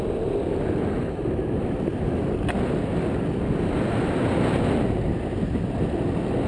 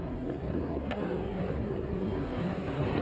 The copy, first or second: second